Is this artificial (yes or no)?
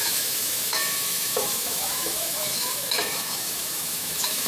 yes